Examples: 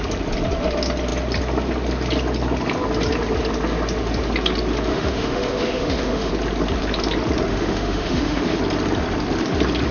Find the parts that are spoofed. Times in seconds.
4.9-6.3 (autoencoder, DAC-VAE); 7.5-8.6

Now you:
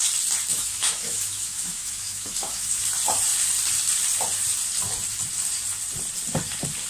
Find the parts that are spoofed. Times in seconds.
0.5-2.8 (autoencoder, DAC-VAE)

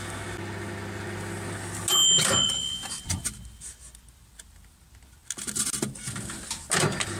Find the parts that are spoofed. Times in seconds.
none

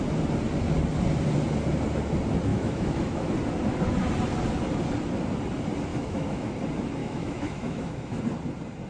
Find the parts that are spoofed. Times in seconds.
2.5-3.3 (autoencoder, DAC-VAE); 5.9-6.5; 7.0-8.2

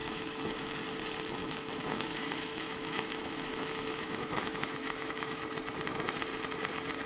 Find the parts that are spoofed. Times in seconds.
0.0-0.7 (autoencoder, DAC-VAE); 1.4-5.4